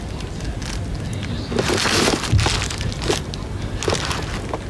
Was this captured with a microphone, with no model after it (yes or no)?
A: yes